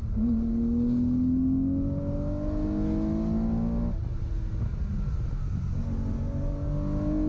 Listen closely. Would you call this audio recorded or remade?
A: recorded